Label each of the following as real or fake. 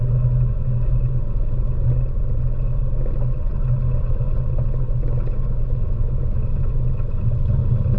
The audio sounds real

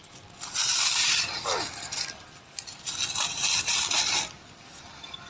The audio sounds real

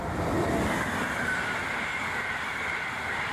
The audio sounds real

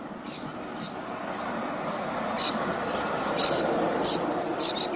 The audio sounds real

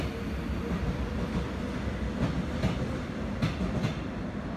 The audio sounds real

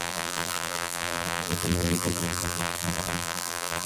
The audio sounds fake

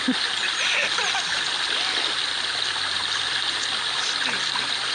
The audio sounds real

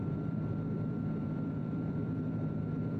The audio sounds fake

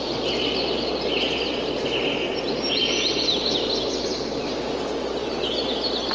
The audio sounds real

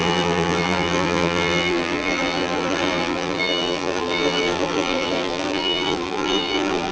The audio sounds fake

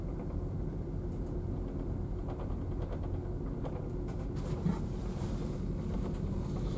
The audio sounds real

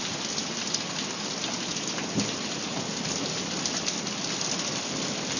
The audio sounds real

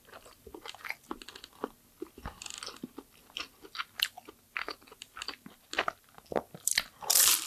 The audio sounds real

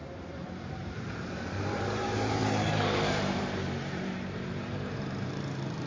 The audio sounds fake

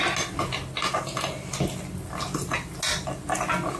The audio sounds real